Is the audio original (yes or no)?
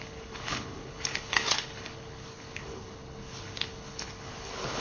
no